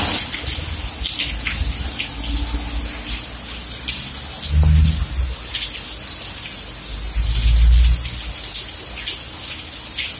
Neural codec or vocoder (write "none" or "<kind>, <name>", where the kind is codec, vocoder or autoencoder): none